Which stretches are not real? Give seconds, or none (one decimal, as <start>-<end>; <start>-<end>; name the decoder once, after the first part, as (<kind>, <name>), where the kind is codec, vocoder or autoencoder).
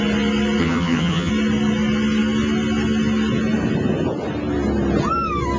0.6-1.3 (vocoder, HiFi-GAN)